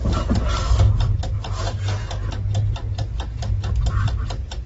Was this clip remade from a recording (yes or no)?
no